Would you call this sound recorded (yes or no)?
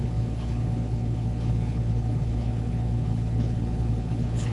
no